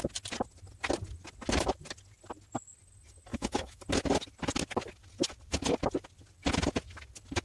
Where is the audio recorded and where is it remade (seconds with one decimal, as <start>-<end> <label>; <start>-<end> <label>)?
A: 0.0-3.3 recorded; 3.3-3.8 remade; 3.8-7.4 recorded